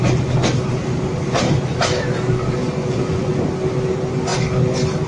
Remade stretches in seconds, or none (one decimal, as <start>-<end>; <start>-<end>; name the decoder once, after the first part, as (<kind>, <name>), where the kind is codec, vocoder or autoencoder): 2.8-3.4 (vocoder, Vocos)